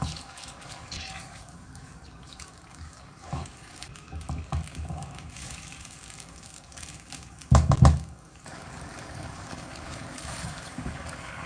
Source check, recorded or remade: remade